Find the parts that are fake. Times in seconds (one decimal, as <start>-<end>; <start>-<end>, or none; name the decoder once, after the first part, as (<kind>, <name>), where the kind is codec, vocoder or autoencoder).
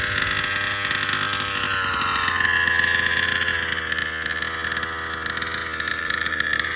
5.9-6.8 (vocoder, BigVGAN v2)